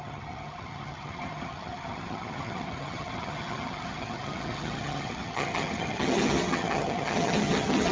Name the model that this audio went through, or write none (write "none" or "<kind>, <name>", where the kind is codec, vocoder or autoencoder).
vocoder, HiFi-GAN